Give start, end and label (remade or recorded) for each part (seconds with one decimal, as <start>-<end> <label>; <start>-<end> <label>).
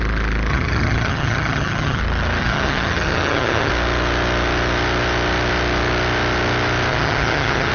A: 0.0-0.5 recorded; 0.5-2.0 remade; 2.0-2.4 recorded; 2.4-3.7 remade; 3.7-6.9 recorded; 6.9-7.7 remade